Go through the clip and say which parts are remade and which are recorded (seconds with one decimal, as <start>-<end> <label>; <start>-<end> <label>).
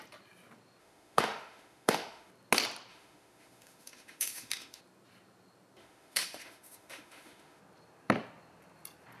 0.0-0.8 recorded; 0.8-2.3 remade; 2.3-2.9 recorded; 2.9-4.8 remade; 4.8-5.8 recorded; 5.8-7.6 remade; 7.6-9.2 recorded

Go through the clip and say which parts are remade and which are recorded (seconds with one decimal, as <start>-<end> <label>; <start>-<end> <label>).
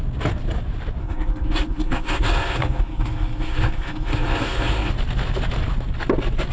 0.0-1.0 recorded; 1.0-4.9 remade; 4.9-6.5 recorded